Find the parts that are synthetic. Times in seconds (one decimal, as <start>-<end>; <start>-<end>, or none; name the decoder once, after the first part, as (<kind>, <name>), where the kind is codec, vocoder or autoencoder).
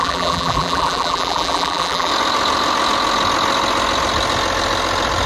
0.0-2.1 (vocoder, BigVGAN v2)